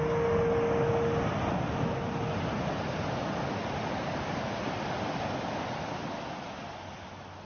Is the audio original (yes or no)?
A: yes